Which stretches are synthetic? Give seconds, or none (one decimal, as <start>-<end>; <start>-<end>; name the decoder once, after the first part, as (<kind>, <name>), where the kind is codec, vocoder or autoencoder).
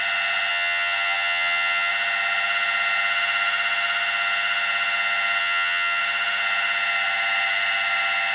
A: 0.5-1.9 (vocoder, HiFi-GAN); 5.4-6.0